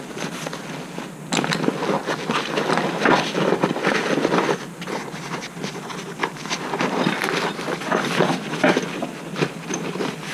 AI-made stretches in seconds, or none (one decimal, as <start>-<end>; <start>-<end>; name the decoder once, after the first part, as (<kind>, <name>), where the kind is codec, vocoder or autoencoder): 6.2-6.9 (vocoder, BigVGAN v2)